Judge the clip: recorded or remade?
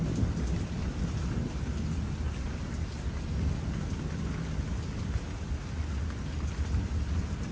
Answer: recorded